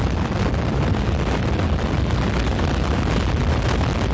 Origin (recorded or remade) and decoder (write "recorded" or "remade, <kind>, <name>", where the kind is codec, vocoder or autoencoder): recorded